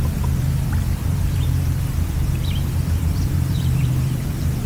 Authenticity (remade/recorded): remade